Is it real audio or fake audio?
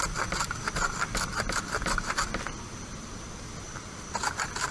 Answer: real